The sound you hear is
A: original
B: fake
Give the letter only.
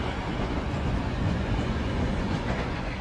B